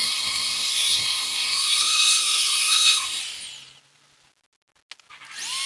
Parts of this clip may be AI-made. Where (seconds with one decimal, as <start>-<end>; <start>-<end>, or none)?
0.0-3.2